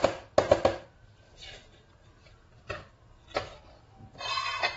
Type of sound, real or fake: real